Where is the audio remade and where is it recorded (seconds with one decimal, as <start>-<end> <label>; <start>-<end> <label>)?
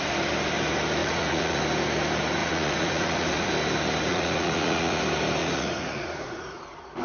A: 0.0-1.0 recorded; 1.0-1.6 remade; 1.6-2.4 recorded; 2.4-3.5 remade; 3.5-4.1 recorded; 4.1-5.0 remade; 5.0-5.4 recorded; 5.4-6.6 remade; 6.6-7.0 recorded